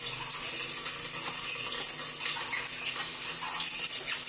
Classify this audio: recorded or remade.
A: recorded